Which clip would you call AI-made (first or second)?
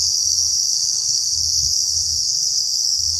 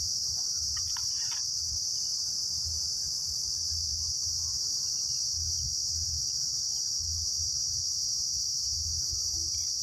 first